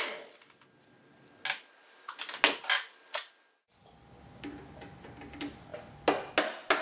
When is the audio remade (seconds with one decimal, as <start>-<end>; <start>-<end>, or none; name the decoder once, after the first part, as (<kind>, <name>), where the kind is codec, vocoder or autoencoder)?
none